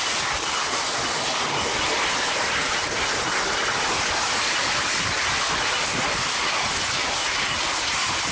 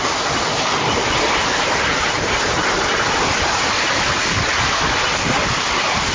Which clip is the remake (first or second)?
second